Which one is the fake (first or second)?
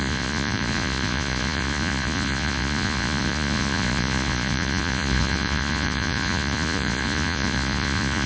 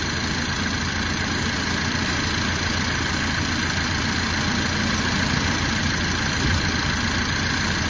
first